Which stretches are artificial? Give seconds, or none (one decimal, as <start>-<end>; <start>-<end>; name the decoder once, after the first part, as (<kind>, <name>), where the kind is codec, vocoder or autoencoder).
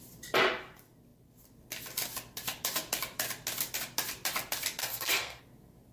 4.8-5.4 (codec, SNAC)